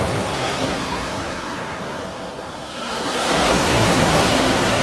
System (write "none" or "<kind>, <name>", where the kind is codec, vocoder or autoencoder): codec, SNAC